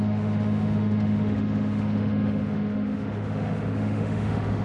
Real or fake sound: fake